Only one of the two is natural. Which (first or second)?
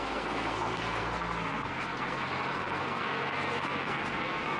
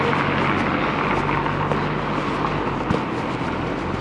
second